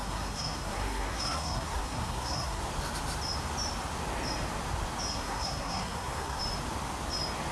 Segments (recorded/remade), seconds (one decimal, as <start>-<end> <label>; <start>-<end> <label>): 0.0-2.6 remade; 2.6-5.1 recorded; 5.1-6.4 remade; 6.4-7.5 recorded